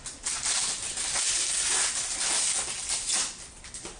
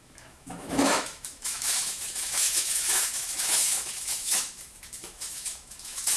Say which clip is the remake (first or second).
second